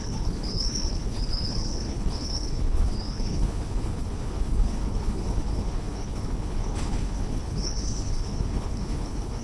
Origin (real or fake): fake